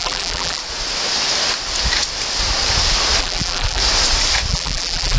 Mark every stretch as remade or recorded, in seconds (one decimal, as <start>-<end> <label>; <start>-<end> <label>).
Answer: 0.0-0.6 remade; 0.6-3.2 recorded; 3.2-3.8 remade; 3.8-4.5 recorded; 4.5-5.2 remade